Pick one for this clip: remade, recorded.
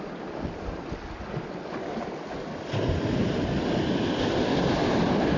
recorded